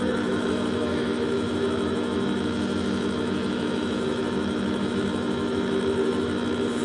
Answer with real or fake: fake